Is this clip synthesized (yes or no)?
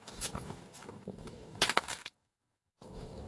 yes